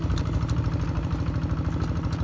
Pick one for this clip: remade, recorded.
recorded